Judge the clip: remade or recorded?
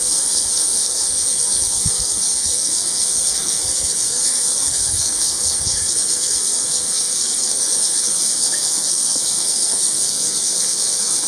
remade